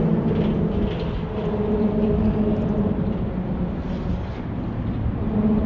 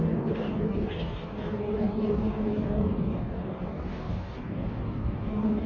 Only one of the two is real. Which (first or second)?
first